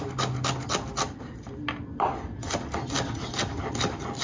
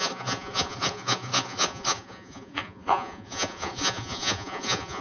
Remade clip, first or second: second